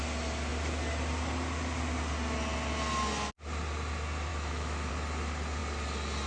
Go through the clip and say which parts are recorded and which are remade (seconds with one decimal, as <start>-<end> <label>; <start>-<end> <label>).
0.0-4.3 recorded; 4.3-4.9 remade; 4.9-6.3 recorded